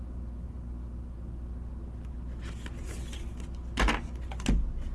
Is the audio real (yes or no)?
yes